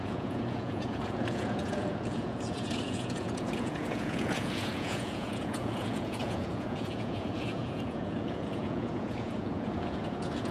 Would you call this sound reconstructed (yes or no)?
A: yes